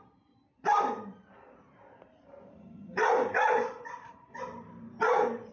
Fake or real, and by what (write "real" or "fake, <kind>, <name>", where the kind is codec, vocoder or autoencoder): fake, vocoder, BigVGAN v2